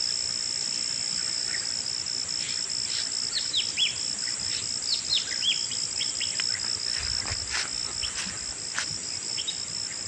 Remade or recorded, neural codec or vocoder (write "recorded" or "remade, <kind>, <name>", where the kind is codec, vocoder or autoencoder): recorded